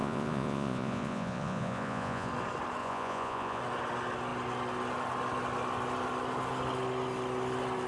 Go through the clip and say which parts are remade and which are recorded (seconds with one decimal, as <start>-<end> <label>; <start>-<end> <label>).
0.0-2.3 remade; 2.3-2.8 recorded; 2.8-3.6 remade; 3.6-7.9 recorded